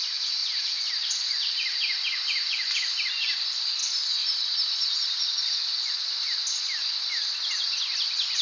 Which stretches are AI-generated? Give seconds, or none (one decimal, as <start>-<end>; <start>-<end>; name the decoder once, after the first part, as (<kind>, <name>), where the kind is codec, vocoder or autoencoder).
none